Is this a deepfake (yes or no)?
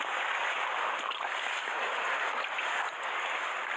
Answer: no